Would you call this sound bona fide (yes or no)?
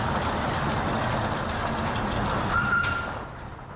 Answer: yes